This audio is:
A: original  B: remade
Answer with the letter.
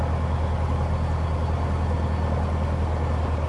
A